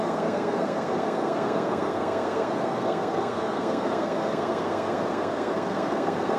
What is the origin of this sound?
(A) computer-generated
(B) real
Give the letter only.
A